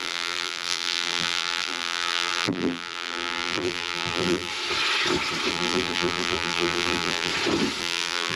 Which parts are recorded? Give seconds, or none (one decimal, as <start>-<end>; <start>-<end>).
4.5-5.5; 7.3-7.8